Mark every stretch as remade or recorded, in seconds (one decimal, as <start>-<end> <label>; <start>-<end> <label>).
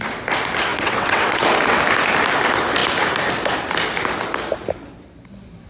0.0-0.7 recorded; 0.7-1.4 remade; 1.4-5.7 recorded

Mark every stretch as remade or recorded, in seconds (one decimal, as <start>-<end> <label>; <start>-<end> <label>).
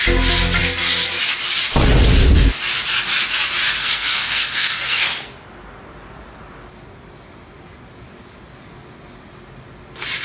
0.0-3.8 recorded; 3.8-5.3 remade; 5.3-10.2 recorded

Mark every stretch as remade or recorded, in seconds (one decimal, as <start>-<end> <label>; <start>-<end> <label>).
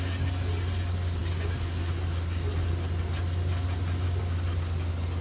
0.0-5.2 recorded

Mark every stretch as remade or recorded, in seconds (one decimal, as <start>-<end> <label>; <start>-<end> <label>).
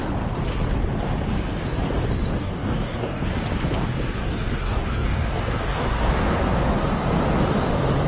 0.0-2.3 recorded; 2.3-3.3 remade; 3.3-4.2 recorded; 4.2-6.1 remade; 6.1-8.1 recorded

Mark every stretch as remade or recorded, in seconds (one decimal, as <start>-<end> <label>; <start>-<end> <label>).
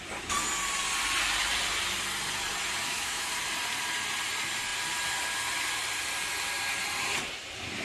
0.0-2.8 recorded; 2.8-3.3 remade; 3.3-7.8 recorded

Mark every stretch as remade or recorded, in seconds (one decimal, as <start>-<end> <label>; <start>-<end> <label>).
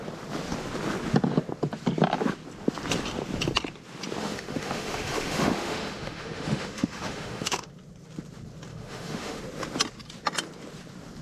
0.0-4.2 recorded; 4.2-7.7 remade; 7.7-8.7 recorded; 8.7-9.4 remade; 9.4-11.2 recorded